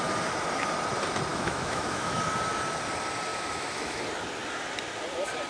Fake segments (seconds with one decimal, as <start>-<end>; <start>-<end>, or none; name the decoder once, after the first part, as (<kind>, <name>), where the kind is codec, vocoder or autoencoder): 1.3-2.2 (autoencoder, DAC-VAE); 3.3-4.0